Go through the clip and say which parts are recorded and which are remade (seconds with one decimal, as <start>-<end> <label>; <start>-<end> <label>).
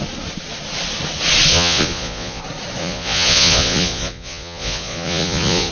0.0-1.5 recorded; 1.5-2.4 remade; 2.4-2.8 recorded; 2.8-5.7 remade